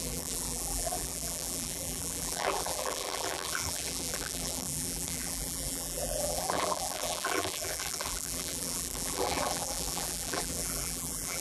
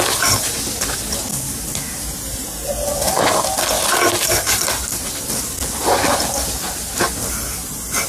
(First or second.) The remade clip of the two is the first